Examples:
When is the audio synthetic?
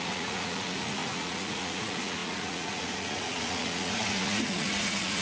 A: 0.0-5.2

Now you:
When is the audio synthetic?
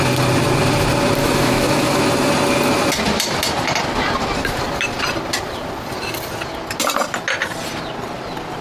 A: 1.2-2.0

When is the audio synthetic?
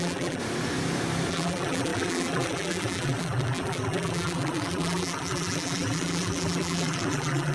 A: 0.0-0.4; 1.3-7.5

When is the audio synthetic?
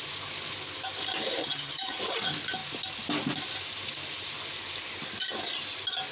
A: 1.4-2.0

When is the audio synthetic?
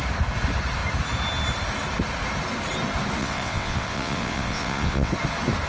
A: 3.2-5.1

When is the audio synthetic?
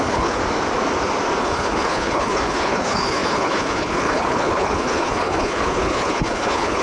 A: 0.0-0.4; 1.4-6.8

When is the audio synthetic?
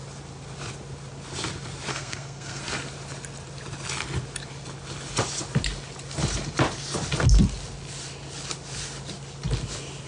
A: 1.9-2.6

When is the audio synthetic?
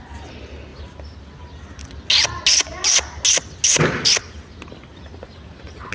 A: none